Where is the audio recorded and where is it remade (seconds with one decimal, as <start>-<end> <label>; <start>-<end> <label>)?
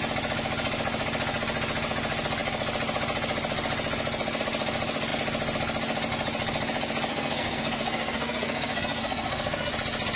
0.0-7.1 recorded; 7.1-9.7 remade; 9.7-10.2 recorded